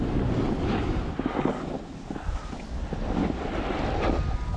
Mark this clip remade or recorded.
recorded